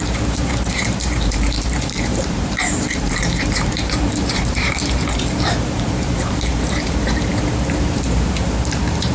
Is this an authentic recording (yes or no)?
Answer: no